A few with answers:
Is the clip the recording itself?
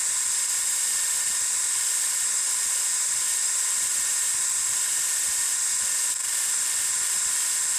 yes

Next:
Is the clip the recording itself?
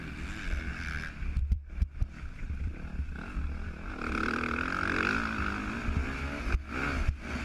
yes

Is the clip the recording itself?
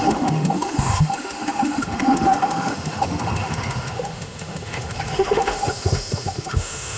no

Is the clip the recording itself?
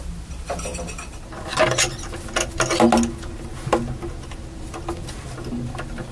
yes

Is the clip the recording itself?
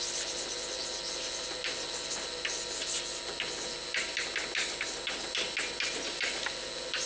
yes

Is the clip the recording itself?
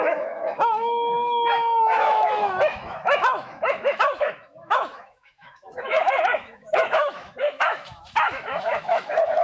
no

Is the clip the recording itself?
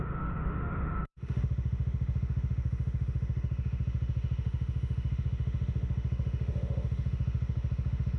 no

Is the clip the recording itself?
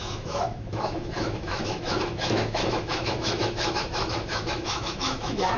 no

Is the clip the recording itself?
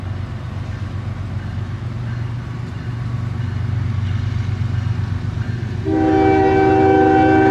yes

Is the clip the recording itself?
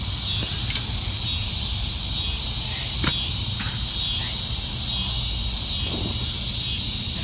yes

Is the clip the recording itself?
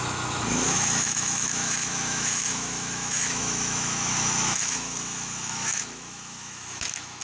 no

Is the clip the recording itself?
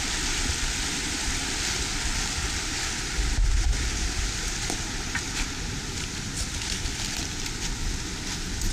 yes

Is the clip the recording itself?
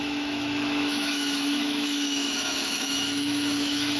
no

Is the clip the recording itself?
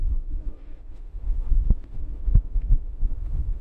no